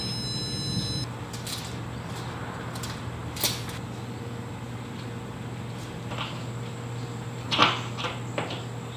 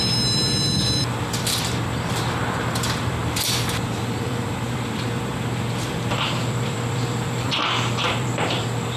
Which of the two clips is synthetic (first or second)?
second